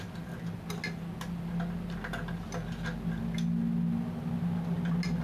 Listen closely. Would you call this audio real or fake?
real